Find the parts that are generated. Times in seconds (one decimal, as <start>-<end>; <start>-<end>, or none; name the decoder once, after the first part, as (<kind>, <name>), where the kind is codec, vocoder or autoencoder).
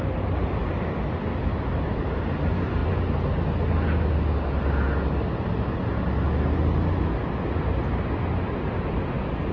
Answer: none